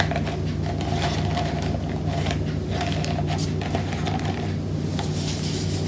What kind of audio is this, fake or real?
real